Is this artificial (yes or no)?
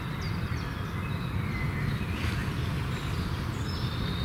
no